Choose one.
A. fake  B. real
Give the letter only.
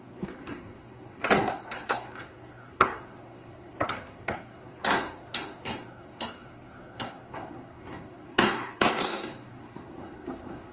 A